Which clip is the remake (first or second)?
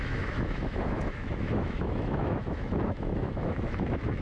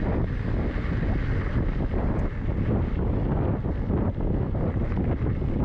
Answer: first